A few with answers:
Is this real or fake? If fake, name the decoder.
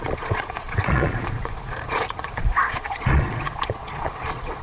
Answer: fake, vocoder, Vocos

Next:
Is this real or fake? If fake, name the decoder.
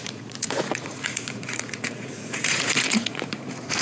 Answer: fake, vocoder, Vocos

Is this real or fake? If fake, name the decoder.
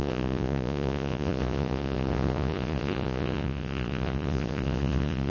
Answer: fake, vocoder, Vocos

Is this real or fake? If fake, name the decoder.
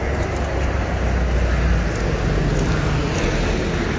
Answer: real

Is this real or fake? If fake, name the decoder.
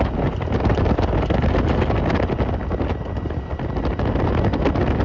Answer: real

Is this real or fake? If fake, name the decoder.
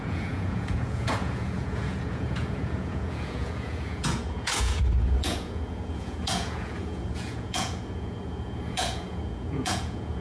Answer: fake, vocoder, Vocos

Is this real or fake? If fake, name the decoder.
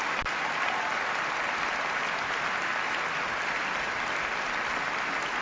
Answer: real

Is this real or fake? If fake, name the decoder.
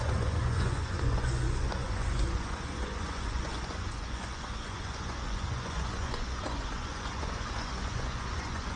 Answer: fake, vocoder, Vocos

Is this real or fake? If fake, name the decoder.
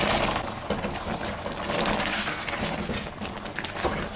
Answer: real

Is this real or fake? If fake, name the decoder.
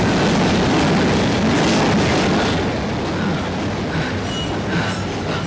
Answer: real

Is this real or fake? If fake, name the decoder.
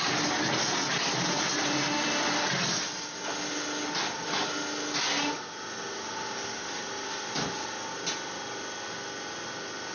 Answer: real